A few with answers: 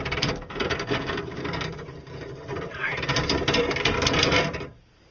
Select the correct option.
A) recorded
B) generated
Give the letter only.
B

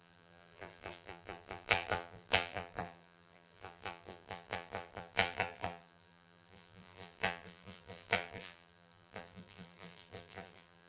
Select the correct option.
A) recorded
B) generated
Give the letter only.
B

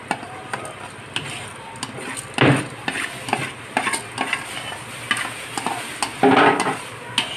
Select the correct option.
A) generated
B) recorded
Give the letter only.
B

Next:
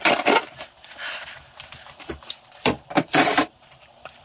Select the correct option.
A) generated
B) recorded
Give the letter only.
A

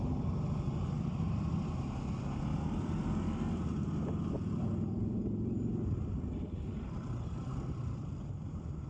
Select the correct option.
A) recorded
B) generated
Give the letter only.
B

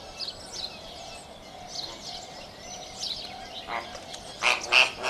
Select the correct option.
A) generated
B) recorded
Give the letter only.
B